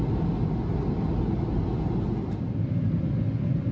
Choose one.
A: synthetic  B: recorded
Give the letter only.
B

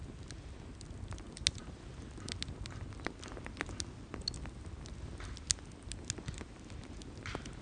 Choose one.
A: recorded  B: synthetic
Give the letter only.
A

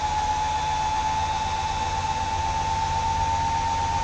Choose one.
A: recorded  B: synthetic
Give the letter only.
A